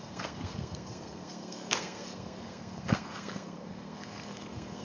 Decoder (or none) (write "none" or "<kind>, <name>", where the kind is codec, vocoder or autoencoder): codec, SNAC